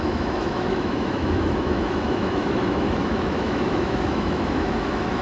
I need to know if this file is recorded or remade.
remade